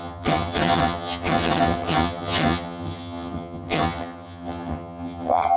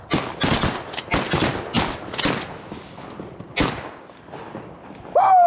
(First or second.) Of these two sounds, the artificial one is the first